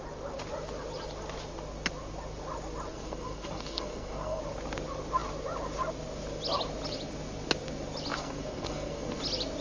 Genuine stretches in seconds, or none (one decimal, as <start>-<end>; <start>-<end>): 0.0-2.9; 4.4-8.1; 9.2-9.6